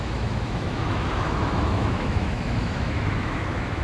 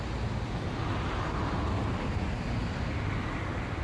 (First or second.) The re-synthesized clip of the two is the first